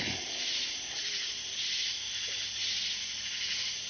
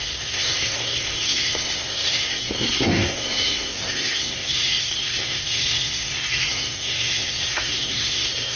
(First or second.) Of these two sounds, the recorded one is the first